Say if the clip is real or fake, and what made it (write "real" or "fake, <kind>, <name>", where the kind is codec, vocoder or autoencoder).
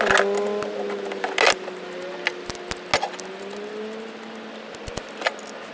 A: real